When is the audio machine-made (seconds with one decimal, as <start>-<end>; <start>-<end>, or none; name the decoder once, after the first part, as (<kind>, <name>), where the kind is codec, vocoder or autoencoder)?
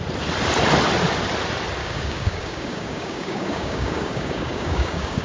1.8-5.2 (codec, DAC)